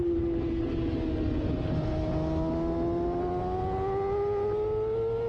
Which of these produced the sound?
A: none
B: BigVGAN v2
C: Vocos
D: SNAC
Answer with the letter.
A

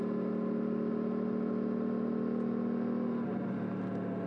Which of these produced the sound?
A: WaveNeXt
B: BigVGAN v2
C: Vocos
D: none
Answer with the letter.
D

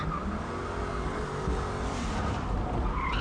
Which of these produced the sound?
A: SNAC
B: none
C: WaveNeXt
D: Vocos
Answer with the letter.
B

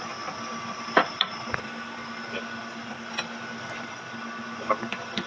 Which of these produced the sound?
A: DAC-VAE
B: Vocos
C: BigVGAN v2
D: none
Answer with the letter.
D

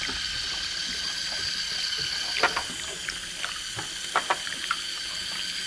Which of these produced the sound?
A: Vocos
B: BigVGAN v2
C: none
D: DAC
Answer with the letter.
C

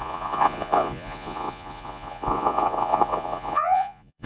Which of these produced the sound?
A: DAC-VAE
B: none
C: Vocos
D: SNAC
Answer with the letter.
C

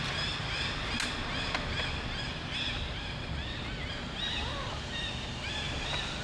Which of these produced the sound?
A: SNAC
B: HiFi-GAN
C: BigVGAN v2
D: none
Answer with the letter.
D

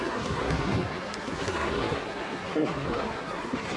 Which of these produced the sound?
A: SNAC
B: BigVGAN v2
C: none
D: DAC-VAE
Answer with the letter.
A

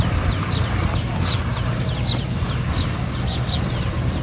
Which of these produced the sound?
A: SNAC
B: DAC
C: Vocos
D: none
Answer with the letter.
D